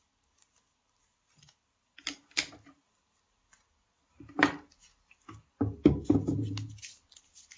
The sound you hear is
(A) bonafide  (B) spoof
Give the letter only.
A